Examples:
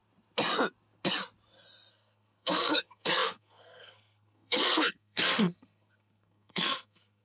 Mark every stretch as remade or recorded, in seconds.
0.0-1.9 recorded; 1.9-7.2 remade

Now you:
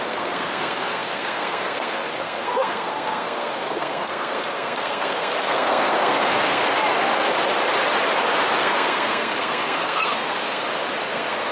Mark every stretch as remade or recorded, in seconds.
0.0-6.6 remade; 6.6-8.6 recorded; 8.6-10.6 remade; 10.6-11.1 recorded; 11.1-11.5 remade

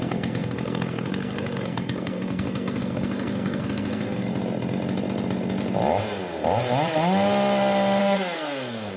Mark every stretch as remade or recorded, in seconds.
0.0-4.2 remade; 4.2-8.0 recorded; 8.0-9.0 remade

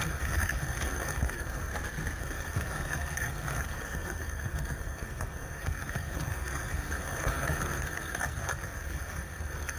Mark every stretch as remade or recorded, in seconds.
0.0-1.7 remade; 1.7-2.2 recorded; 2.2-9.8 remade